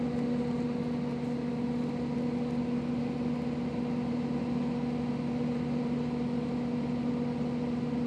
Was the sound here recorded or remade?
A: recorded